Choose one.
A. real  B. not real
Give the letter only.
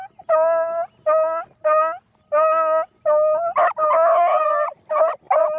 A